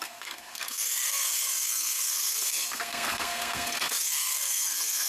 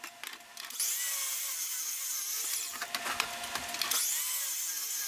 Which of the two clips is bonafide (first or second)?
second